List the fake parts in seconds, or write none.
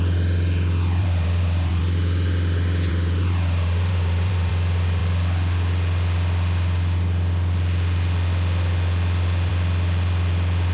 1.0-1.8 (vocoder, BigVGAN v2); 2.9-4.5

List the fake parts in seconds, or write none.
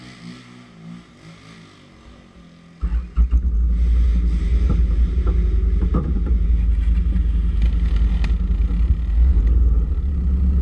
4.5-5.2 (vocoder, BigVGAN v2)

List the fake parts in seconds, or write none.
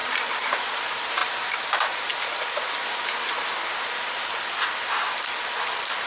0.0-0.7 (vocoder, BigVGAN v2); 1.2-2.1